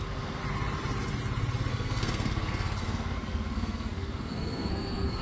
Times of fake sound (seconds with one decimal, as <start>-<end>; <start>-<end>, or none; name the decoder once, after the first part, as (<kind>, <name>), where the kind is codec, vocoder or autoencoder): 0.0-0.4 (codec, SNAC); 1.7-5.2